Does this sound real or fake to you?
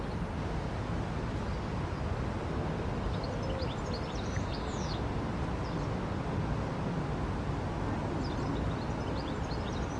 real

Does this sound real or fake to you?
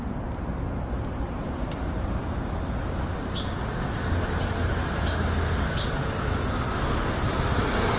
real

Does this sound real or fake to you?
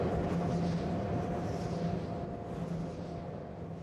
real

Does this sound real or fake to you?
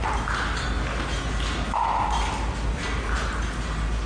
real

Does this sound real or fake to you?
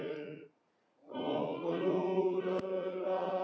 fake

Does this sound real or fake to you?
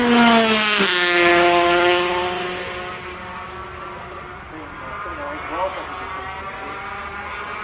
real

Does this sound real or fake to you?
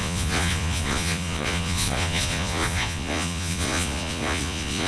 fake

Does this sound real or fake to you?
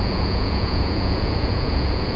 fake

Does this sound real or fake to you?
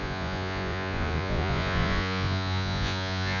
fake